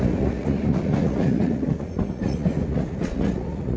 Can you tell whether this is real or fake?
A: fake